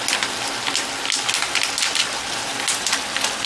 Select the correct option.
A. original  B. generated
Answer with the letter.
A